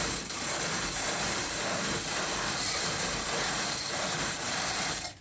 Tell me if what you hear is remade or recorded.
remade